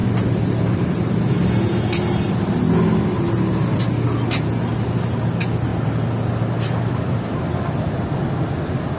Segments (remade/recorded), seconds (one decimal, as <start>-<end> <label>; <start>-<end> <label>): 0.0-9.0 recorded